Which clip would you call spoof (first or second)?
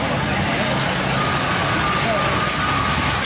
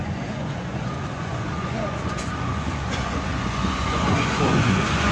second